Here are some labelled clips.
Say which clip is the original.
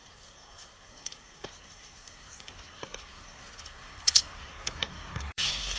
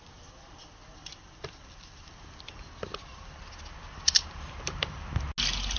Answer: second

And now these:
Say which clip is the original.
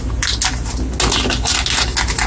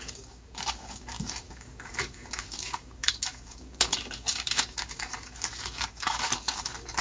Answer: first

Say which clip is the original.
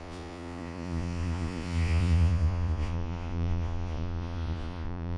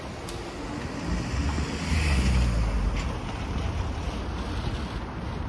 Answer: second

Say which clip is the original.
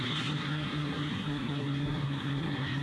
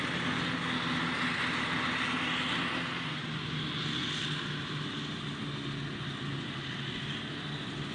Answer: second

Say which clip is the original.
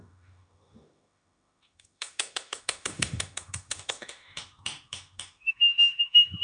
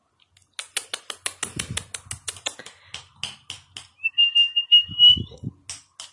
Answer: second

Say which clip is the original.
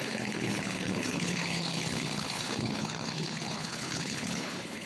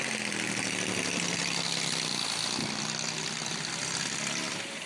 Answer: second